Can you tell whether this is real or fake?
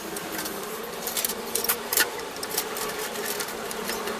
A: fake